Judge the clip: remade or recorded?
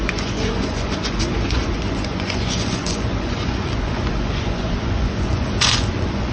remade